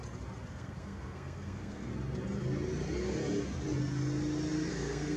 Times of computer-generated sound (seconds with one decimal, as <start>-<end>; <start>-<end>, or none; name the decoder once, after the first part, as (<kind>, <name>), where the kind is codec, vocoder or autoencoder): 0.5-1.9 (codec, SNAC); 4.7-5.2